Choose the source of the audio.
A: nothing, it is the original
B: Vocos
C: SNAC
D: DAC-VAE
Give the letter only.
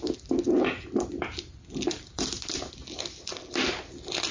A